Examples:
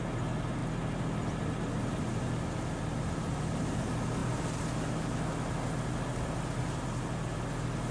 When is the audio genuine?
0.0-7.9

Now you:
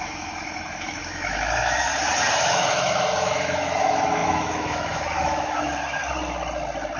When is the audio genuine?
1.9-2.4; 6.0-7.0

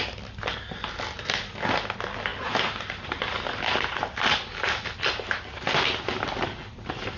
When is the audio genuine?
0.0-7.2

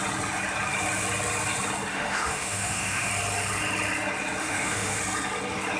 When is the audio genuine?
0.0-1.9; 3.1-4.4; 5.0-5.8

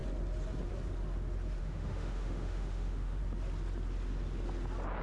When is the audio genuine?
0.0-1.6; 3.2-5.0

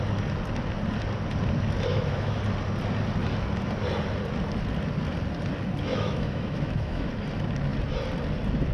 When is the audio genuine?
0.0-1.9; 2.4-5.9; 7.1-8.7

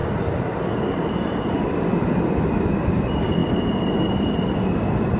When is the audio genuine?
0.0-5.2